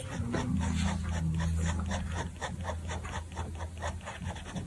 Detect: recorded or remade recorded